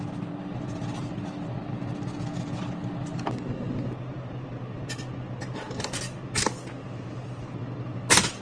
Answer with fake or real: real